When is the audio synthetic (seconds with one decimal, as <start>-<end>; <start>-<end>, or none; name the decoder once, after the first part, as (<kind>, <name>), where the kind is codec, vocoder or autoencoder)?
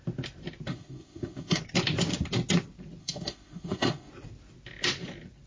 0.7-1.6 (autoencoder, DAC-VAE); 3.0-4.1